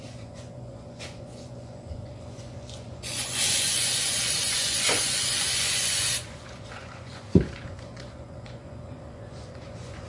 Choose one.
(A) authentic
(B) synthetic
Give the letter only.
B